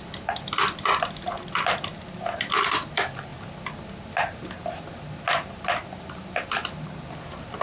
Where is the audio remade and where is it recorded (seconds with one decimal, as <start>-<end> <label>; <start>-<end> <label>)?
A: 0.0-7.6 recorded